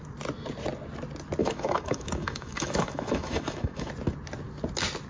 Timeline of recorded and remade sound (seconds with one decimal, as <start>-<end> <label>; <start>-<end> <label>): 0.0-1.4 recorded; 1.4-3.9 remade; 3.9-5.1 recorded